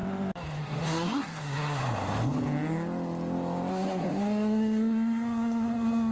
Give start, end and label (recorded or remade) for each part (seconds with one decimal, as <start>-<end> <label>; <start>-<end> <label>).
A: 0.0-0.6 recorded; 0.6-1.8 remade; 1.8-3.7 recorded; 3.7-6.1 remade